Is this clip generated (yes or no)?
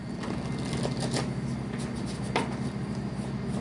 no